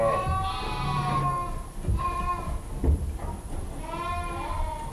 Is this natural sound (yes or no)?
yes